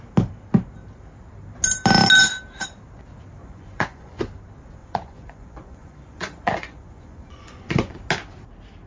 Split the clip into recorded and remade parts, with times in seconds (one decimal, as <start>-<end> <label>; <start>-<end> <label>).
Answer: 0.0-3.4 recorded; 3.4-4.2 remade; 4.2-4.8 recorded; 4.8-8.0 remade; 8.0-8.9 recorded